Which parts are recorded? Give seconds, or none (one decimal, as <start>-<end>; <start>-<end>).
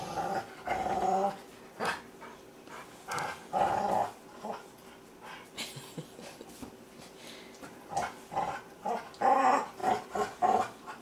0.0-9.8